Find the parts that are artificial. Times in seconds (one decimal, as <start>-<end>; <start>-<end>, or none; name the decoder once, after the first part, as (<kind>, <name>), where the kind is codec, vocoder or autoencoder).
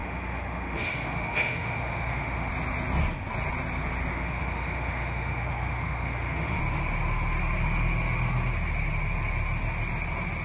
0.0-2.5 (autoencoder, DAC-VAE); 4.1-6.6